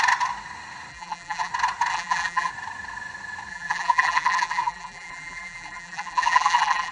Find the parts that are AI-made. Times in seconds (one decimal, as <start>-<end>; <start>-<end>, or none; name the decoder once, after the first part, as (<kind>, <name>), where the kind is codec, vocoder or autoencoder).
0.9-1.5 (vocoder, BigVGAN v2); 1.9-2.5; 3.5-6.9